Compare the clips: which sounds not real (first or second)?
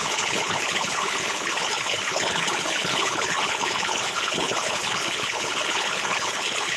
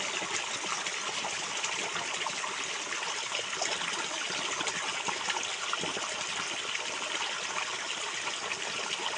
first